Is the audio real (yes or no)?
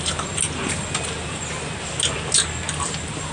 yes